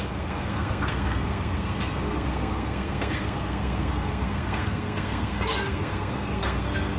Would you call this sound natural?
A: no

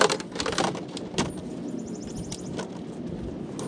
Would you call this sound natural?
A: yes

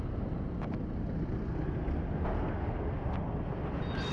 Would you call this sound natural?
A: yes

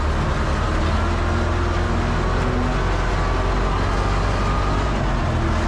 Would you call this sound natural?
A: yes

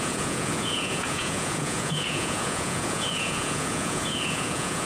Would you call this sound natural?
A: no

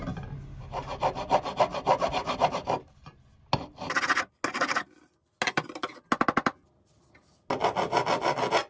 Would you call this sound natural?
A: yes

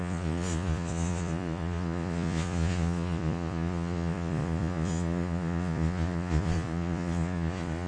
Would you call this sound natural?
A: no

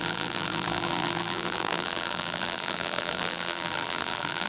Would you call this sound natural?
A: no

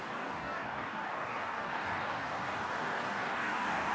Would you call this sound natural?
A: no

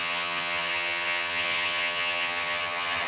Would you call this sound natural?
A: no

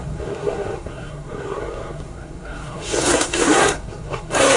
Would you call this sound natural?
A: no